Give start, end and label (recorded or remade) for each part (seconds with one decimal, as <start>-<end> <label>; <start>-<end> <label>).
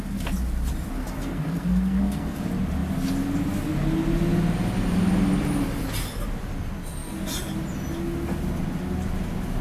0.0-1.0 recorded; 1.0-2.4 remade; 2.4-9.6 recorded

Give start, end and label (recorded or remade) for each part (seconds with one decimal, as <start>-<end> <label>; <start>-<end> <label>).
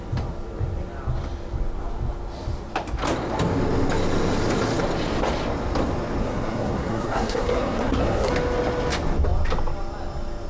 0.0-6.2 recorded; 6.2-8.3 remade; 8.3-10.5 recorded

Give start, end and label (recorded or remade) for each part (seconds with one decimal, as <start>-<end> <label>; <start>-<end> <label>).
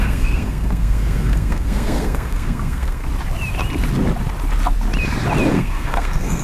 0.0-3.0 remade; 3.0-5.5 recorded; 5.5-6.4 remade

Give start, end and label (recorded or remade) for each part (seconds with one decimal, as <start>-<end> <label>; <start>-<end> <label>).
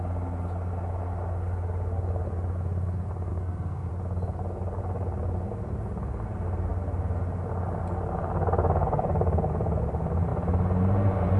0.0-3.3 recorded; 3.3-3.9 remade; 3.9-11.4 recorded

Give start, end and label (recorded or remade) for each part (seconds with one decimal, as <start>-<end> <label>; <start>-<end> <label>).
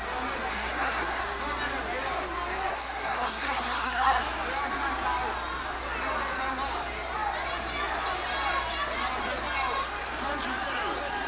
0.0-0.5 recorded; 0.5-1.2 remade; 1.2-2.7 recorded; 2.7-4.2 remade; 4.2-11.3 recorded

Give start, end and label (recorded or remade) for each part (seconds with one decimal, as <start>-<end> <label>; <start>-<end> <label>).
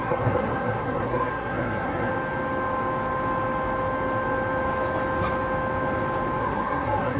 0.0-2.1 remade; 2.1-6.4 recorded; 6.4-7.2 remade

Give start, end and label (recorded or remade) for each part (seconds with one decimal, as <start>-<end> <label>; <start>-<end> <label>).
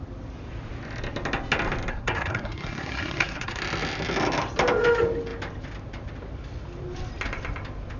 0.0-1.9 recorded; 1.9-3.6 remade; 3.6-8.0 recorded